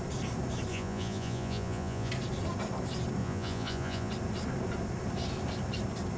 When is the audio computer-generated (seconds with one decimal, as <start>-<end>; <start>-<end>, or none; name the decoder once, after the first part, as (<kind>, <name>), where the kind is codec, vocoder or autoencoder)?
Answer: 0.7-2.1 (vocoder, Vocos); 3.2-4.1